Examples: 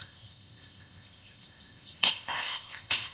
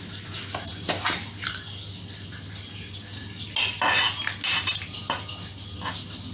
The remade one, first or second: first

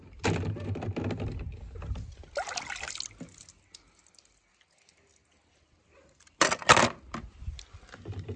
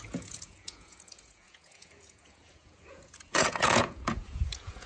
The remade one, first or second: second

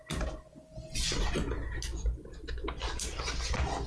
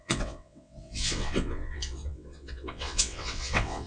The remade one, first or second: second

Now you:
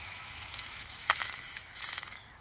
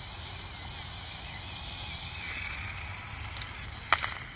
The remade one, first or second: first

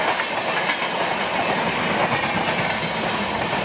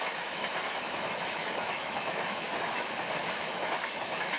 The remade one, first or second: second